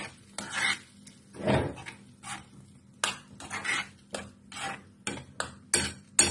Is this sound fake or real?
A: real